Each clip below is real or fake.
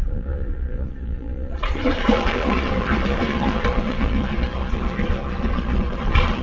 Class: fake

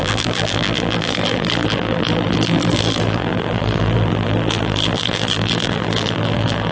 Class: fake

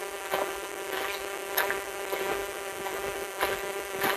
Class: real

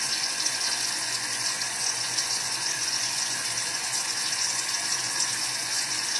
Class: fake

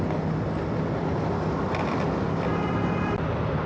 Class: real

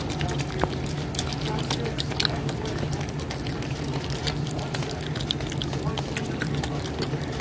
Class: real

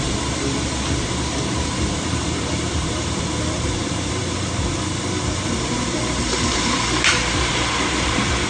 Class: fake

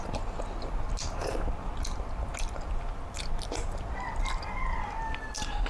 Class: real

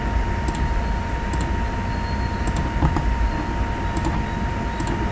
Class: real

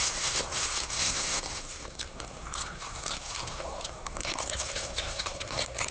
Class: fake